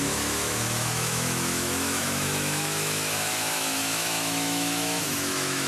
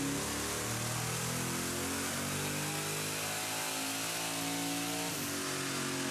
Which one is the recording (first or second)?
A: second